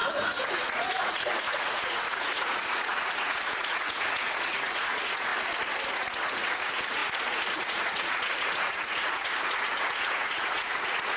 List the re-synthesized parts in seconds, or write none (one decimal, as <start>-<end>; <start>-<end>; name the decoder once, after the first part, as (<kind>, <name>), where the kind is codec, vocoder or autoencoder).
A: 0.0-5.3 (vocoder, Vocos); 5.9-11.2